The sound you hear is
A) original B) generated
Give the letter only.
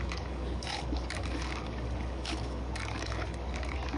B